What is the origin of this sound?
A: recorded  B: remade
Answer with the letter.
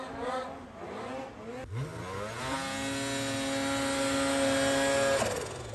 A